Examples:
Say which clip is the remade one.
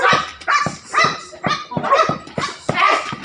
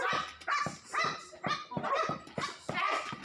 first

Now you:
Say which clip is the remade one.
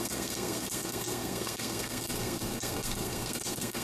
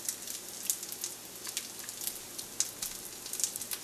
first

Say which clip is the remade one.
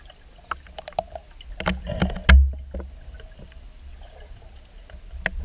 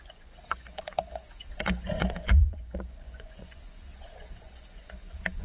second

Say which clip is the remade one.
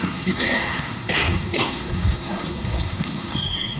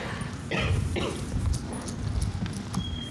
first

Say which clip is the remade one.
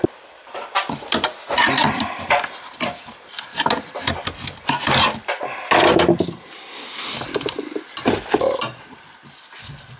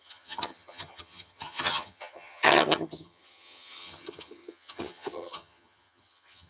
second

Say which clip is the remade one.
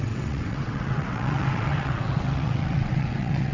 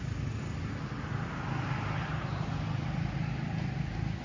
first